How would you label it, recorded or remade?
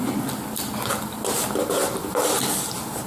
recorded